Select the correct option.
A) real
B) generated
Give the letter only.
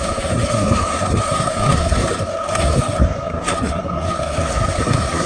B